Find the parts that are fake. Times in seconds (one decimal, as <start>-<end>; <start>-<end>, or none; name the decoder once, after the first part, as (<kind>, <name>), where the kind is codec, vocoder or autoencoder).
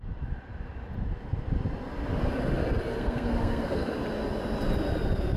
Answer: 3.0-3.9 (codec, SNAC)